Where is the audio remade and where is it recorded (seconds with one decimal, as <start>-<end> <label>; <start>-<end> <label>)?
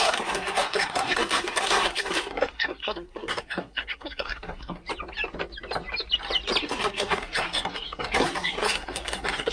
0.0-4.8 remade; 4.8-6.6 recorded; 6.6-9.5 remade